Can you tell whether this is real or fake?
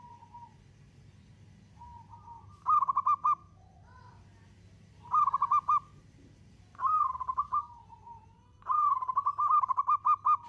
real